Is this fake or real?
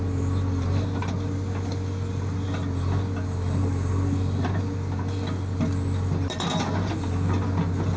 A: real